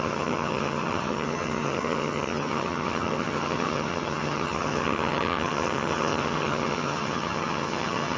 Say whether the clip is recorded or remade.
remade